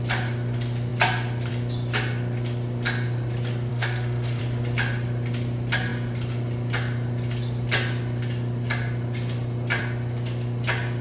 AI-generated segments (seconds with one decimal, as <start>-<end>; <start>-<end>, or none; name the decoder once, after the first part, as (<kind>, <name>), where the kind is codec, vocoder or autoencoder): 3.7-4.4 (autoencoder, DAC-VAE)